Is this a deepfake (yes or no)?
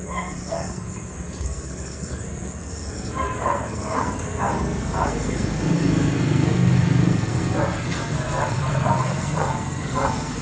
yes